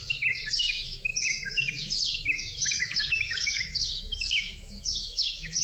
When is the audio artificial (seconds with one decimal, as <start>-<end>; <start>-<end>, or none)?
0.0-5.6